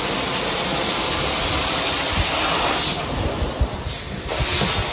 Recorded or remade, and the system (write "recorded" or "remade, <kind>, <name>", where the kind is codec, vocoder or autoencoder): recorded